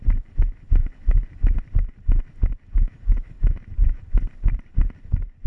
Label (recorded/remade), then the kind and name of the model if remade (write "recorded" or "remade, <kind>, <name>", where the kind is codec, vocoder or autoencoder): recorded